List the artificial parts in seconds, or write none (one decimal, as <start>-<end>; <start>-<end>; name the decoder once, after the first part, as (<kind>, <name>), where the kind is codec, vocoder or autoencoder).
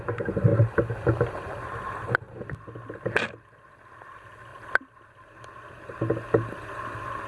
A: none